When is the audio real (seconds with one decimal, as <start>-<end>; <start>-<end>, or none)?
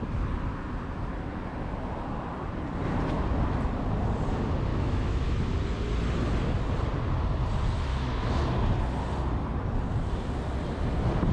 0.0-4.7; 5.5-7.9; 8.4-11.3